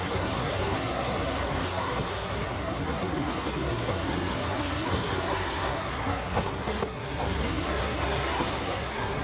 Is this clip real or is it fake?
fake